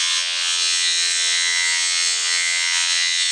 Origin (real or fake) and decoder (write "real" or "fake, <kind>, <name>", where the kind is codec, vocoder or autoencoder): fake, vocoder, WaveNeXt